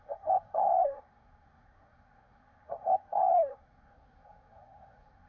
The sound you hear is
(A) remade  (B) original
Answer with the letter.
A